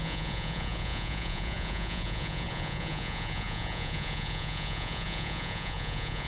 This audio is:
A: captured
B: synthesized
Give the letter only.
B